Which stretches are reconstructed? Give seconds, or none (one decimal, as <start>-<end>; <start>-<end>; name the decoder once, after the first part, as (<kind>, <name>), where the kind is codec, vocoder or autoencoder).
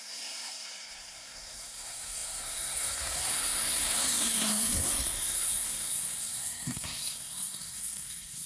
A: 0.0-8.5 (codec, SNAC)